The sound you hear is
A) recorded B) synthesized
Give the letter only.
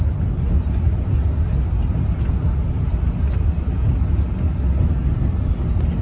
A